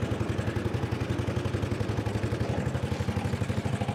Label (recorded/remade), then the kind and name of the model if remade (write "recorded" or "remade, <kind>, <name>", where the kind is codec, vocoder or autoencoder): recorded